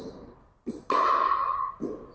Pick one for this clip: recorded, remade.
recorded